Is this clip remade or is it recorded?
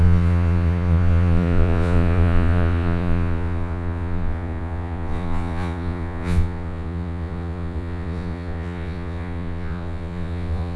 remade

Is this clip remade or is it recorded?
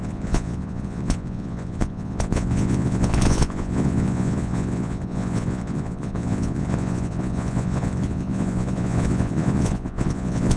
remade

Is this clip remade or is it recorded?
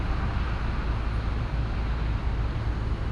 recorded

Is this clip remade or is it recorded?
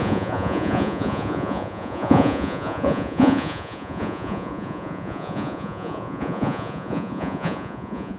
remade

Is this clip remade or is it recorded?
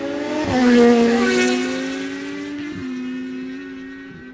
recorded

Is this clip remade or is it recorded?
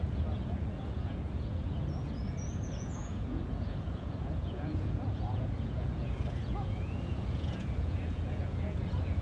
remade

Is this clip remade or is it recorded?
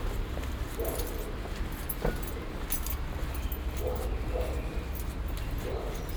recorded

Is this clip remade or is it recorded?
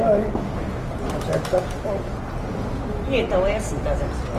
recorded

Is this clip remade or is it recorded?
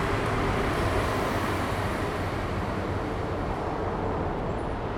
recorded